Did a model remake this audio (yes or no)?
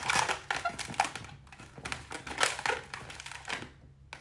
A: no